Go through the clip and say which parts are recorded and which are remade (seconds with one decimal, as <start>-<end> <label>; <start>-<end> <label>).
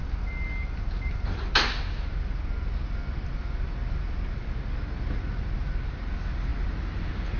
0.0-7.4 recorded